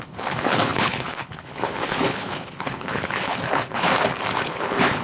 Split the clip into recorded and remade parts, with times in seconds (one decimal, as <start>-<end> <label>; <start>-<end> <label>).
0.0-3.9 remade; 3.9-4.4 recorded; 4.4-5.0 remade